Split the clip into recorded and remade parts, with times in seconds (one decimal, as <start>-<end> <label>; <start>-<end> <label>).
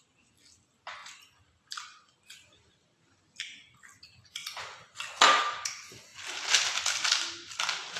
0.0-8.0 recorded